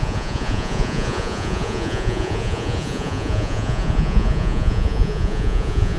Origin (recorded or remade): remade